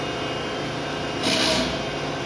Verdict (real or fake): real